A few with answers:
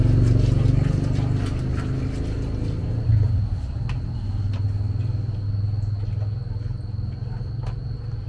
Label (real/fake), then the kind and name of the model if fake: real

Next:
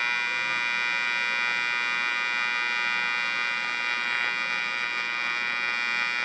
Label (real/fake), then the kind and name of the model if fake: real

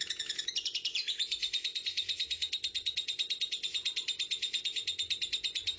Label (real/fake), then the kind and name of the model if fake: fake, vocoder, Vocos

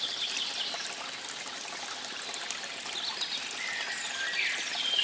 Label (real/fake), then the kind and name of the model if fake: real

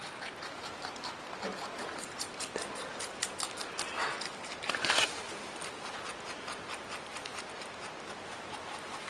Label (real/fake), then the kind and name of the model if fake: real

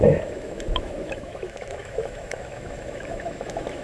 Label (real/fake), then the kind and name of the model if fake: fake, autoencoder, DAC-VAE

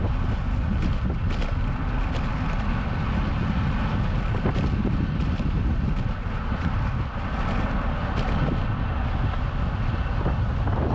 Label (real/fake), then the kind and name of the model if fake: real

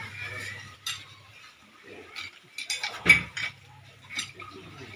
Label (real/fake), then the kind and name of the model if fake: real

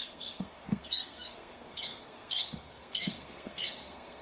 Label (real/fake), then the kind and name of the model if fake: fake, codec, SNAC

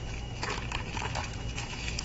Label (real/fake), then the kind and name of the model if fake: fake, autoencoder, DAC-VAE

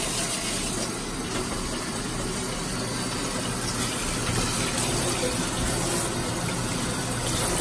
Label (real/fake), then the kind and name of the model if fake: real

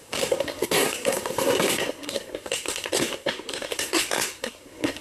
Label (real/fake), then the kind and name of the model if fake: fake, codec, SNAC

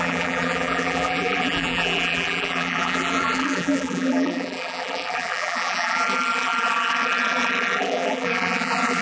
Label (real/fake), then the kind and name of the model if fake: fake, vocoder, BigVGAN v2